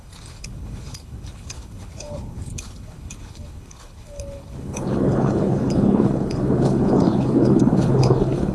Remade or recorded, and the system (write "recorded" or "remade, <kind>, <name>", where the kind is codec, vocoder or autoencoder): remade, codec, HILCodec